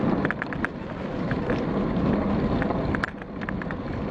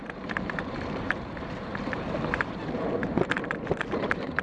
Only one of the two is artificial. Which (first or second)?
second